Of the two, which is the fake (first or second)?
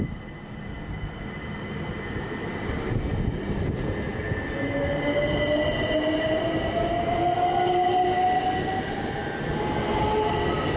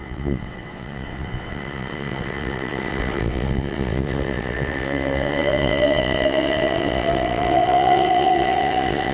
second